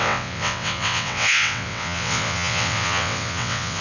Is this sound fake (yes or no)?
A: yes